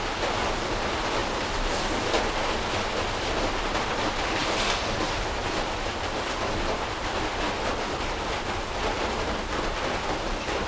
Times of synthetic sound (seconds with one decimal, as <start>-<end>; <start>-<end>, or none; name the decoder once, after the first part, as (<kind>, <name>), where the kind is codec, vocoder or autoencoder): 1.2-1.9 (vocoder, BigVGAN v2); 5.4-7.0; 8.9-9.4